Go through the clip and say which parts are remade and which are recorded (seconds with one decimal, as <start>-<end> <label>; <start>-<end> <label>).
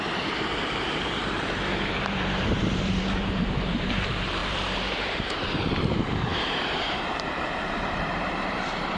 0.0-9.0 remade